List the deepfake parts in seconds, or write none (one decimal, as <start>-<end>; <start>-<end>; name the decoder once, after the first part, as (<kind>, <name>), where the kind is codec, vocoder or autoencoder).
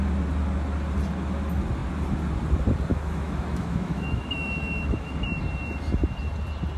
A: 2.9-5.1 (autoencoder, DAC-VAE)